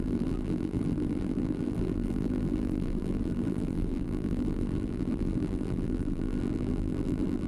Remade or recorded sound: remade